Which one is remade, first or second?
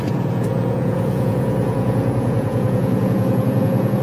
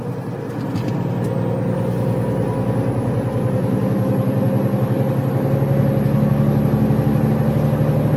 first